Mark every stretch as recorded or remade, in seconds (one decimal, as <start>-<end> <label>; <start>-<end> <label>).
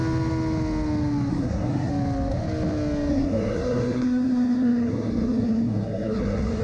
0.0-1.3 recorded; 1.3-1.9 remade; 1.9-3.1 recorded; 3.1-6.6 remade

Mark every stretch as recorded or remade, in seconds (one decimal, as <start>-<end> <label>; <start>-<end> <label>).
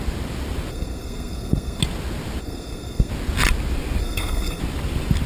0.0-0.7 recorded; 0.7-1.8 remade; 1.8-2.4 recorded; 2.4-3.1 remade; 3.1-4.0 recorded; 4.0-4.6 remade; 4.6-5.3 recorded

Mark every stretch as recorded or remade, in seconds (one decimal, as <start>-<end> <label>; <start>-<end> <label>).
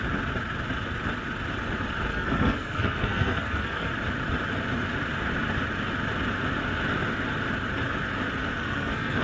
0.0-2.1 recorded; 2.1-3.9 remade; 3.9-8.4 recorded; 8.4-9.2 remade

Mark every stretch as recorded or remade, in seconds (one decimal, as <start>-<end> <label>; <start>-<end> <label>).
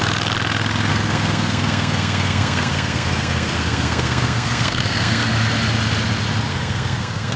0.0-0.9 recorded; 0.9-5.3 remade; 5.3-6.5 recorded; 6.5-7.4 remade